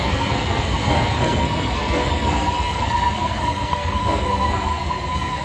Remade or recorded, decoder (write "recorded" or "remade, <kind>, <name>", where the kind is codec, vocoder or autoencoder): remade, codec, SNAC